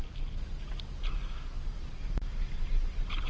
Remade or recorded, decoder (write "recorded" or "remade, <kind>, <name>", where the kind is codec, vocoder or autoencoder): recorded